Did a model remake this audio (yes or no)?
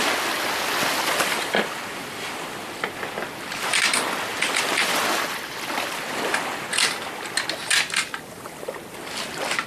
no